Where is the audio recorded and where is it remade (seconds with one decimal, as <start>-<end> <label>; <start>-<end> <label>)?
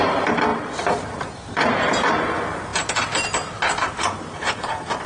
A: 0.0-5.1 remade